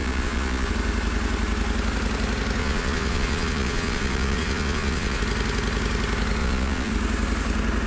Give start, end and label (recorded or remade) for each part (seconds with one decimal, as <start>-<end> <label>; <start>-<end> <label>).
0.0-0.7 remade; 0.7-2.6 recorded; 2.6-5.2 remade; 5.2-6.4 recorded; 6.4-6.9 remade; 6.9-7.9 recorded